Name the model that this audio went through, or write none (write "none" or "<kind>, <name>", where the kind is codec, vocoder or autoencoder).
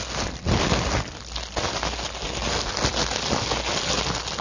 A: none